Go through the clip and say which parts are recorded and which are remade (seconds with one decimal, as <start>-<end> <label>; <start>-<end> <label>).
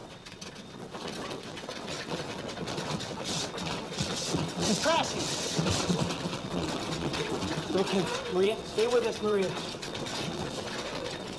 0.0-11.4 remade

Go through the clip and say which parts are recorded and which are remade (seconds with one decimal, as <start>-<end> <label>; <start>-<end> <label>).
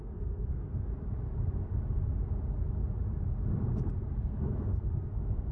0.0-0.9 remade; 0.9-4.2 recorded; 4.2-5.5 remade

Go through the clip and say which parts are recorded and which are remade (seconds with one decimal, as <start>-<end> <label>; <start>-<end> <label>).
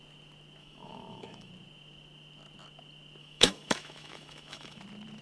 0.0-0.6 recorded; 0.6-1.5 remade; 1.5-3.2 recorded; 3.2-4.8 remade; 4.8-5.2 recorded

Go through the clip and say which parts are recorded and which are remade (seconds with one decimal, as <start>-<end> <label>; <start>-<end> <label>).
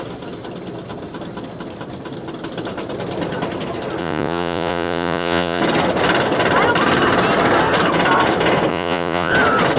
0.0-4.0 recorded; 4.0-5.6 remade; 5.6-8.7 recorded; 8.7-9.3 remade; 9.3-9.8 recorded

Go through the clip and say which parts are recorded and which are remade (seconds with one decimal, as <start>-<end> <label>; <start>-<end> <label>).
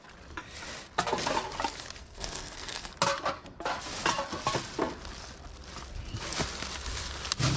0.0-2.0 recorded; 2.0-2.9 remade; 2.9-7.6 recorded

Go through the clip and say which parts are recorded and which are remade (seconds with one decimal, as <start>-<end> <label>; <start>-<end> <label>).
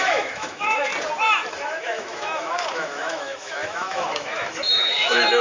0.0-0.9 remade; 0.9-1.5 recorded; 1.5-5.4 remade